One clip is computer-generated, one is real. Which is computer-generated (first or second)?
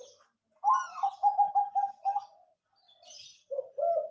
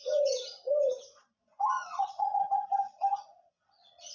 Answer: second